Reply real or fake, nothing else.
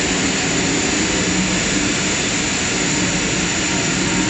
real